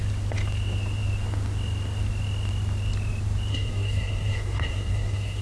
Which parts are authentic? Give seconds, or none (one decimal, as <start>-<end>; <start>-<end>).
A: 0.0-3.5